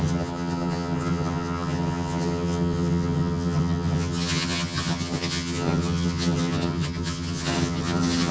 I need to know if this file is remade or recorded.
remade